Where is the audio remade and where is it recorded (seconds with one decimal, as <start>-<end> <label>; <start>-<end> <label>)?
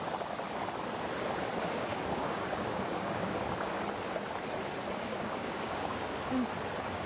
0.0-1.6 recorded; 1.6-3.4 remade; 3.4-5.1 recorded; 5.1-6.0 remade; 6.0-7.1 recorded